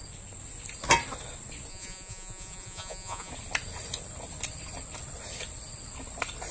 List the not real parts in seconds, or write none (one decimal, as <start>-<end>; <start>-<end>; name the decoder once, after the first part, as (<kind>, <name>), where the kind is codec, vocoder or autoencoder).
1.7-3.3 (vocoder, Vocos)